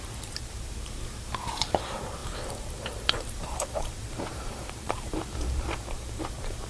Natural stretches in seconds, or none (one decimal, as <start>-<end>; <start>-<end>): none

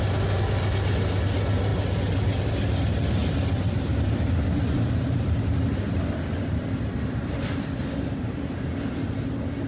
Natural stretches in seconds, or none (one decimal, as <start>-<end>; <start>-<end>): 0.0-3.2; 8.5-9.7

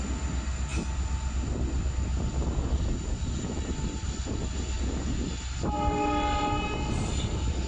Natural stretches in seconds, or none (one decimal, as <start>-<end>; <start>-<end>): 0.0-7.7

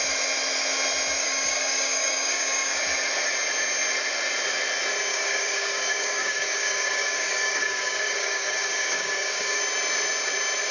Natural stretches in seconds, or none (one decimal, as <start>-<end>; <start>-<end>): 0.0-1.2; 2.8-5.1; 9.6-10.7